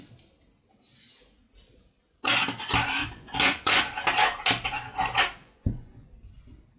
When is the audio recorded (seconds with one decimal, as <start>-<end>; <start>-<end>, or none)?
0.0-3.0; 3.8-5.4; 6.1-6.8